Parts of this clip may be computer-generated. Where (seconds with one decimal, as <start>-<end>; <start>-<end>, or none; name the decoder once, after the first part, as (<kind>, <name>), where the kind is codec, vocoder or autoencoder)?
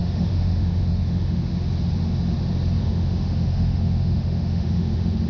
0.0-1.5 (autoencoder, DAC-VAE); 2.8-5.3